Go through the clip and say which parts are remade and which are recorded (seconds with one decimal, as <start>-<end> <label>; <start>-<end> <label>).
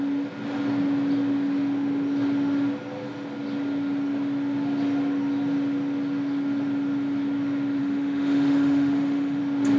0.0-7.8 recorded; 7.8-9.4 remade; 9.4-9.8 recorded